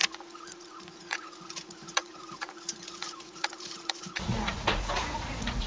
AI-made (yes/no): yes